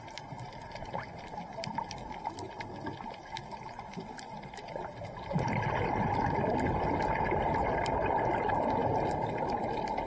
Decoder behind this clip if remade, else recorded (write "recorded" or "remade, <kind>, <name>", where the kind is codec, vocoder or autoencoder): remade, vocoder, BigVGAN v2